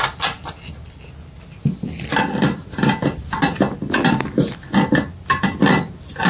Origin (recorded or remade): recorded